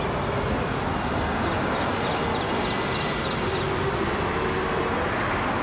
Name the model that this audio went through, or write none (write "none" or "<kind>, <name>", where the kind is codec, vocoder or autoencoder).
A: none